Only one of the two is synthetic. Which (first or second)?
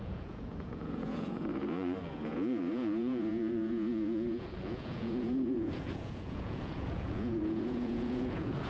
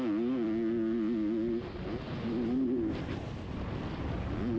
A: first